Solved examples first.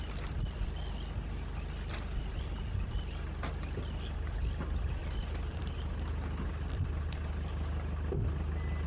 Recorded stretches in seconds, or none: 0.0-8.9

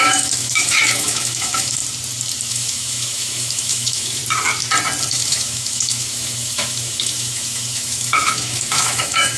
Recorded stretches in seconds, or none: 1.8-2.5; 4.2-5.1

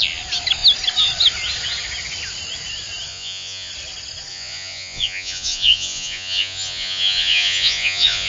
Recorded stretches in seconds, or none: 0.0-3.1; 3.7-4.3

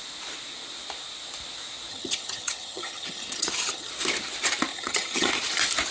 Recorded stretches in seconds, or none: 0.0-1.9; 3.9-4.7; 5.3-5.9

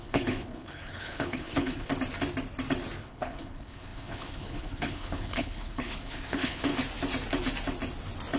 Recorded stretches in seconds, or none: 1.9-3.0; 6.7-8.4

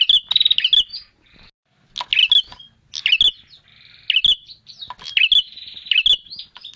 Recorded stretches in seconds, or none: 0.0-6.8